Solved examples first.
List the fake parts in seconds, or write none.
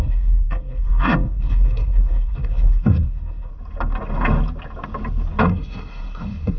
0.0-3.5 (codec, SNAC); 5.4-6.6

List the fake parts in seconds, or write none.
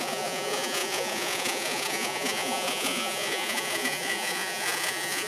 0.0-5.3 (vocoder, Vocos)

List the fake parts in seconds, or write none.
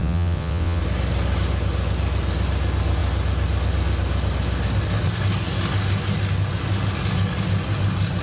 0.0-0.8 (vocoder, WaveNeXt)